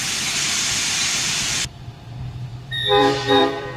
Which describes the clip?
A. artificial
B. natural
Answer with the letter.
A